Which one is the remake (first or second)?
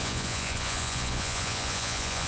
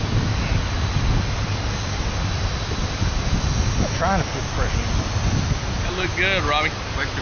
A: first